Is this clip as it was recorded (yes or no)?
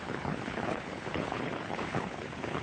no